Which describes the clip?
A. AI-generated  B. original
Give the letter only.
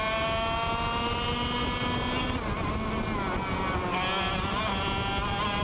B